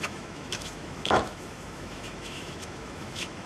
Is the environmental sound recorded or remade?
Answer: remade